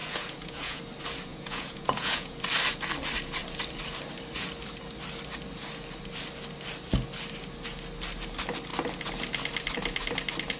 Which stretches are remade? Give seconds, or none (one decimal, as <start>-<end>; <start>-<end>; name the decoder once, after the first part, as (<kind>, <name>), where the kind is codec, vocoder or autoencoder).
0.0-0.8 (vocoder, Vocos); 1.3-2.4